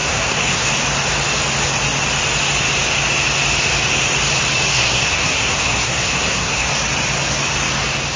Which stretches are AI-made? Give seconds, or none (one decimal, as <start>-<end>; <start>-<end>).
0.0-0.7; 4.7-6.7